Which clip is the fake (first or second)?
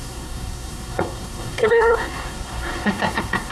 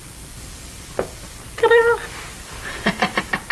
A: first